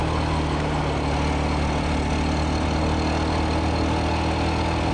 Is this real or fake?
real